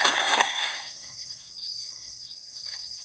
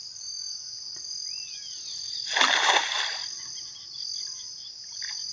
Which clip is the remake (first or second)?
first